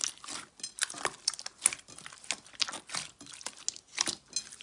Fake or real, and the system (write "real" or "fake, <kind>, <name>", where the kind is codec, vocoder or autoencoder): real